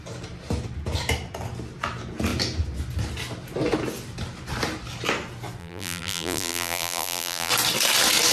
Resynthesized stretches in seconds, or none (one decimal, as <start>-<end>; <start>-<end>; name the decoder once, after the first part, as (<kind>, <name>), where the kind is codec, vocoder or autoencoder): 5.6-7.5 (vocoder, BigVGAN v2)